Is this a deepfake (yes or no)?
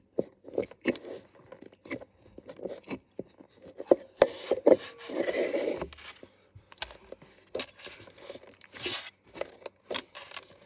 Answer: no